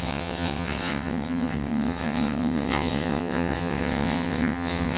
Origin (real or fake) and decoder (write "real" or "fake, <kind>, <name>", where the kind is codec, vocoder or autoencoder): fake, vocoder, WaveNeXt